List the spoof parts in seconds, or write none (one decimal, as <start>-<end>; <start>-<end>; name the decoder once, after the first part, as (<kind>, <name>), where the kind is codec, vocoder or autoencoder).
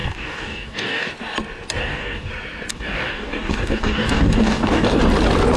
0.0-1.1 (codec, DAC); 1.8-2.3; 2.7-5.0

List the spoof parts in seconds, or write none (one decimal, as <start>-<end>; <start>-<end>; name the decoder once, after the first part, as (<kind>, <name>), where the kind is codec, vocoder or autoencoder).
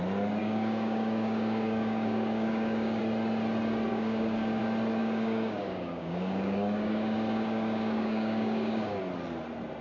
0.4-3.0 (codec, DAC); 3.9-4.6; 5.0-9.0